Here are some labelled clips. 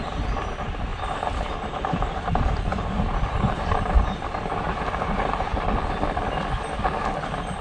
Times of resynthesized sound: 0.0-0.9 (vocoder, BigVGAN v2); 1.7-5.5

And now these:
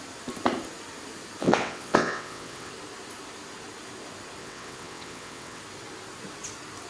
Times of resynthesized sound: 1.4-2.7 (vocoder, WaveNeXt); 4.4-5.6

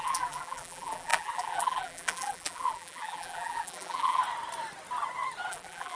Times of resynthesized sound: 0.0-4.2 (vocoder, BigVGAN v2); 5.5-6.0

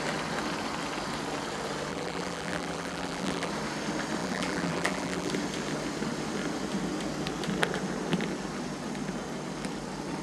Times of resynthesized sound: 1.9-3.5 (vocoder, BigVGAN v2); 4.2-5.3

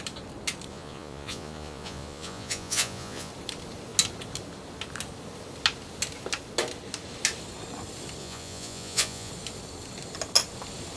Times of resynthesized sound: 0.7-3.3 (vocoder, Vocos); 8.2-9.3

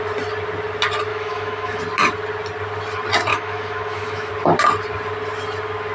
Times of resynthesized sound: 1.1-1.8 (autoencoder, DAC-VAE); 3.3-4.3

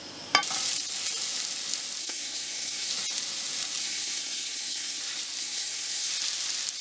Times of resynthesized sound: 2.0-2.9 (codec, SNAC); 3.8-5.0; 5.4-6.1

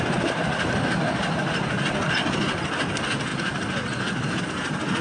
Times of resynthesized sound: none